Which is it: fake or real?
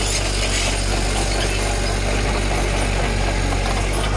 real